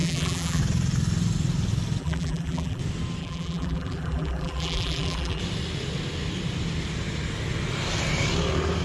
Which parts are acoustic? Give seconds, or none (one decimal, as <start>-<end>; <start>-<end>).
0.6-2.0; 2.8-3.2; 5.4-8.8